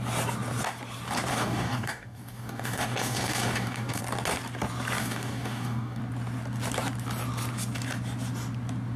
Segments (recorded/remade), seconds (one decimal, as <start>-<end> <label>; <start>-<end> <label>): 0.0-1.3 recorded; 1.3-4.0 remade; 4.0-5.0 recorded; 5.0-6.0 remade; 6.0-9.0 recorded

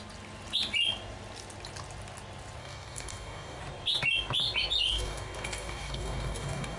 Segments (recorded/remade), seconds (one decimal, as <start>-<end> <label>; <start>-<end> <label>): 0.0-2.6 recorded; 2.6-3.6 remade; 3.6-4.9 recorded; 4.9-6.8 remade

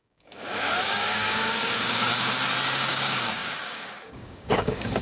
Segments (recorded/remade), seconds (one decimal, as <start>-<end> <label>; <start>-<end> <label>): 0.0-2.1 remade; 2.1-2.9 recorded; 2.9-5.0 remade

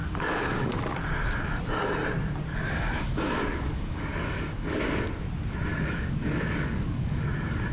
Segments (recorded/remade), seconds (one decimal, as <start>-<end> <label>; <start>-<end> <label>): 0.0-0.8 remade; 0.8-2.5 recorded; 2.5-4.8 remade; 4.8-5.7 recorded; 5.7-7.7 remade

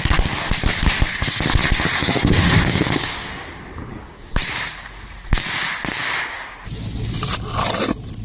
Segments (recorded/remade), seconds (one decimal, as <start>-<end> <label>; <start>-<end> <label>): 0.0-2.0 recorded; 2.0-3.5 remade; 3.5-3.9 recorded; 3.9-4.4 remade; 4.4-6.0 recorded; 6.0-6.7 remade; 6.7-8.2 recorded

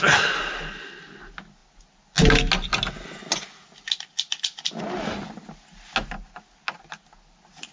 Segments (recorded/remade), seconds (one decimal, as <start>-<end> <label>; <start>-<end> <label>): 0.0-7.7 recorded